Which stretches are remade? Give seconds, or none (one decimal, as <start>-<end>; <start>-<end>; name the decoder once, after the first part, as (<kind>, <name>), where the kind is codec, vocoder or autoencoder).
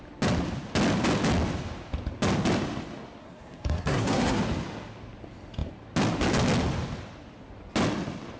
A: 3.2-4.4 (codec, SNAC)